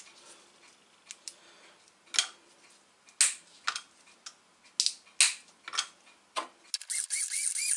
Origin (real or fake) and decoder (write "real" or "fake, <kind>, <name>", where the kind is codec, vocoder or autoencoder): real